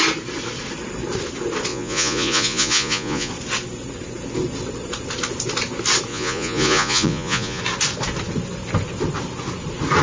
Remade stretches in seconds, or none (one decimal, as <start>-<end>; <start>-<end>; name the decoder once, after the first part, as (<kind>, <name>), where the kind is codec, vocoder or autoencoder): 1.7-3.3 (vocoder, Vocos); 6.1-7.6